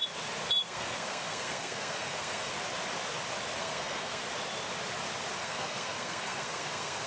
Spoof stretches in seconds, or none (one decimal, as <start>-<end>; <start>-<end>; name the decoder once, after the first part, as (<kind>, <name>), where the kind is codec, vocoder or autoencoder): 0.6-2.5 (codec, SNAC); 3.6-4.2; 5.4-7.1